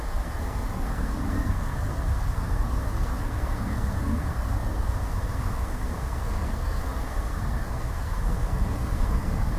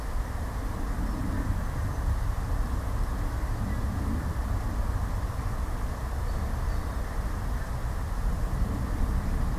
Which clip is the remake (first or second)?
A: first